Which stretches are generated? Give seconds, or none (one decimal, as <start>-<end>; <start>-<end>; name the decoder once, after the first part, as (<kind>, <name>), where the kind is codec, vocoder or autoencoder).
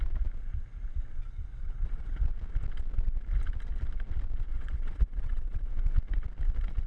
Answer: 1.2-2.1 (vocoder, Vocos); 4.5-5.7